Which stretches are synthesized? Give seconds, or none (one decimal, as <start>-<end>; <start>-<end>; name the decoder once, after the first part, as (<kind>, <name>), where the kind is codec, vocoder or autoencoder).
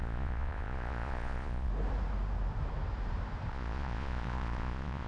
0.0-1.7 (vocoder, Vocos); 3.5-5.1